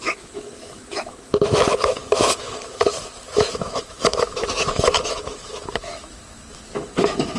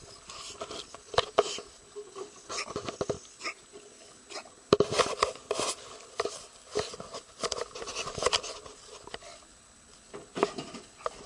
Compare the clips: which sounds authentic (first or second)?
second